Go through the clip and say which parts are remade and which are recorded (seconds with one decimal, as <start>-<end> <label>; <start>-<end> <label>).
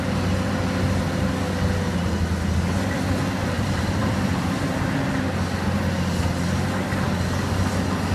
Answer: 0.0-3.4 recorded; 3.4-4.6 remade; 4.6-8.1 recorded